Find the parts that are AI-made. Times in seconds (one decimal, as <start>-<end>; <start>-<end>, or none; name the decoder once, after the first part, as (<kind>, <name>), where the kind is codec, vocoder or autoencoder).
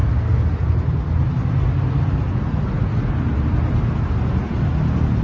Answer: none